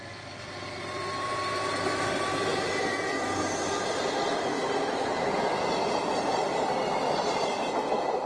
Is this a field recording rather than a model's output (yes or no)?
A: yes